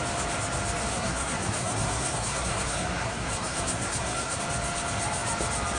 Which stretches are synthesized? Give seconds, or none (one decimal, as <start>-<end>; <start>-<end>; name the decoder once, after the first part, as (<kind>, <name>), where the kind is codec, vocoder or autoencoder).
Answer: 0.9-4.4 (codec, SNAC)